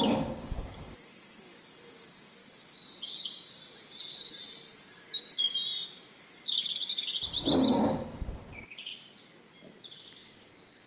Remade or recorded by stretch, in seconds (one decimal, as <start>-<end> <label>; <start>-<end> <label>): 0.0-2.4 remade; 2.4-3.0 recorded; 3.0-3.6 remade; 3.6-8.0 recorded; 8.0-8.9 remade; 8.9-10.2 recorded; 10.2-10.9 remade